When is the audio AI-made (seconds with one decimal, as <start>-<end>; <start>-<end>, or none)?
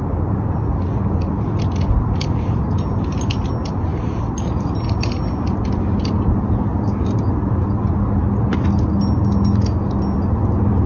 none